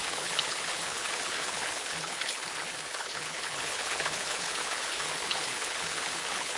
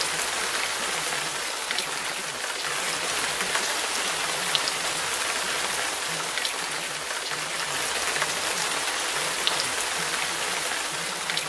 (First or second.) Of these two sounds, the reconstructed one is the first